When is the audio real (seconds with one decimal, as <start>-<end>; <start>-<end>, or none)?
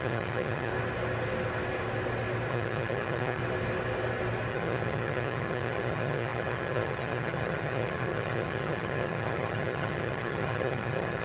0.7-2.5; 3.4-4.5